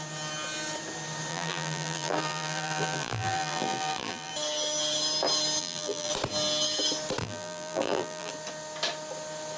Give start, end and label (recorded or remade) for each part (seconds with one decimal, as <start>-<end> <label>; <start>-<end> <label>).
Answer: 0.0-1.3 recorded; 1.3-4.3 remade; 4.3-5.6 recorded; 5.6-6.1 remade; 6.1-7.2 recorded; 7.2-8.3 remade; 8.3-9.6 recorded